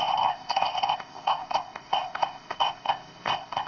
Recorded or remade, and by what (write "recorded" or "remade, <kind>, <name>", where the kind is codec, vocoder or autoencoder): remade, codec, ZipCodec